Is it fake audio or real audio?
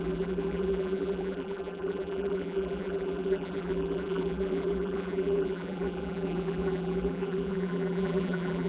fake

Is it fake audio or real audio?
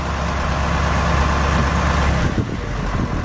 real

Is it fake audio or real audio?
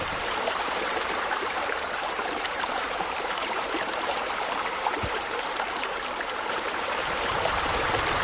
fake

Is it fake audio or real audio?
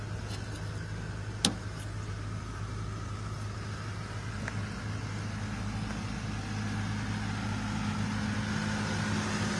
real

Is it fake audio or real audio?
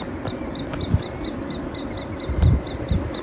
real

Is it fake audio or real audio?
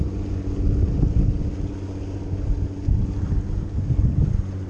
real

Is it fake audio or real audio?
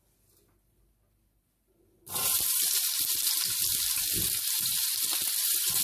fake